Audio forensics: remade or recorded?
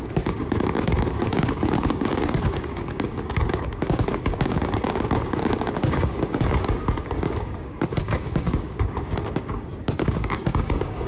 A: remade